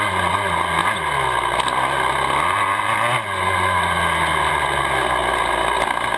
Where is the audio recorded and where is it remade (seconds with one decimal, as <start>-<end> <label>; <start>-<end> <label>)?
0.0-6.2 recorded